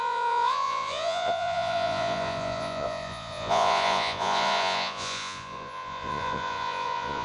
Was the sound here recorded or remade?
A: remade